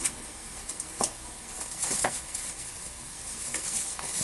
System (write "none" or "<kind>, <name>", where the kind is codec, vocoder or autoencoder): codec, SNAC